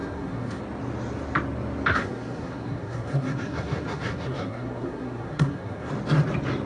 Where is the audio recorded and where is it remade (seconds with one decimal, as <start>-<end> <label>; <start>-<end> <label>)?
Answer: 0.0-0.6 remade; 0.6-1.9 recorded; 1.9-5.9 remade; 5.9-6.7 recorded